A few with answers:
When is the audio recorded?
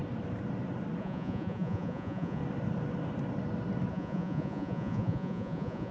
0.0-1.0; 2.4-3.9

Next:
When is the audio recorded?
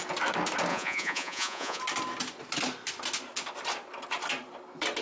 0.0-0.7; 1.8-5.0